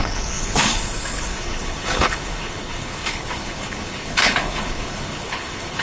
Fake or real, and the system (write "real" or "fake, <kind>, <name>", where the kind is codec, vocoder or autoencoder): fake, codec, HILCodec